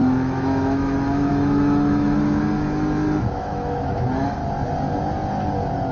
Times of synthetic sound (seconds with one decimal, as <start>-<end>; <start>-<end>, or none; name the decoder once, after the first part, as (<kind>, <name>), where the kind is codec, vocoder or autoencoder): 0.0-2.5 (autoencoder, DAC-VAE); 3.3-4.4